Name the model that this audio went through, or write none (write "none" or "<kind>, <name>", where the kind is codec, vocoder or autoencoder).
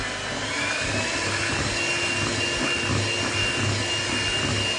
none